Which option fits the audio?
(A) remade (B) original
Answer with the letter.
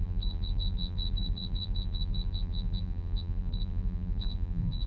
A